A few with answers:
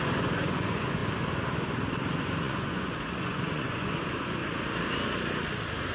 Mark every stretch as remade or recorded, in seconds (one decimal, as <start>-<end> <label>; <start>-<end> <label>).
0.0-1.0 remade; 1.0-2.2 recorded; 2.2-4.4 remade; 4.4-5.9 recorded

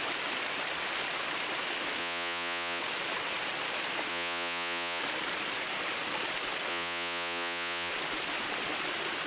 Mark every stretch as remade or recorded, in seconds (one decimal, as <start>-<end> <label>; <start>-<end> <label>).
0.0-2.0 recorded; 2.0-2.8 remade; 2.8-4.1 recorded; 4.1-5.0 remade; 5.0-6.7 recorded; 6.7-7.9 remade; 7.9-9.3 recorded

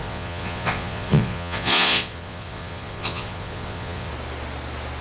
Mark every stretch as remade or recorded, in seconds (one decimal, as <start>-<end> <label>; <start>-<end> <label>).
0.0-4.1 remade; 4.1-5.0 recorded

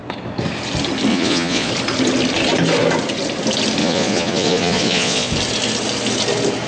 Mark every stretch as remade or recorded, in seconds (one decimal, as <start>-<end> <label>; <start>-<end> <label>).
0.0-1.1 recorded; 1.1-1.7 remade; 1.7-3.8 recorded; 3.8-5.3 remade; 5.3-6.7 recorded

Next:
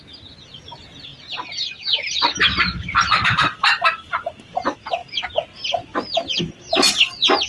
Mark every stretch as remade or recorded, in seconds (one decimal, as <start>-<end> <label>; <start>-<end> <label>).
0.0-7.5 recorded

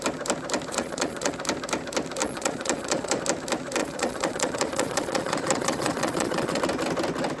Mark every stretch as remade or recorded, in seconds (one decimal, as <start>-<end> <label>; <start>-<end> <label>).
0.0-0.7 recorded; 0.7-1.3 remade; 1.3-2.2 recorded; 2.2-3.2 remade; 3.2-3.8 recorded; 3.8-6.6 remade; 6.6-7.4 recorded

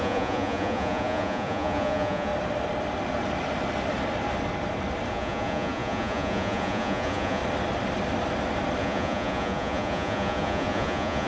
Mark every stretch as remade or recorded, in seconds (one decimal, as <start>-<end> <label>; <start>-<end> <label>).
0.0-2.3 remade; 2.3-5.1 recorded; 5.1-7.4 remade; 7.4-8.8 recorded; 8.8-11.3 remade

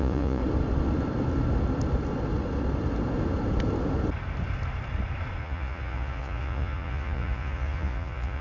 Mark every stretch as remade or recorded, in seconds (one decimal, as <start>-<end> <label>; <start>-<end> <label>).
0.0-0.4 remade; 0.4-5.4 recorded; 5.4-8.4 remade